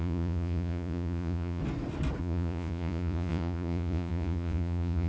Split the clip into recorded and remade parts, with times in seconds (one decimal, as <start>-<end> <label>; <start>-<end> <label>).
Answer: 0.0-1.6 remade; 1.6-2.2 recorded; 2.2-5.1 remade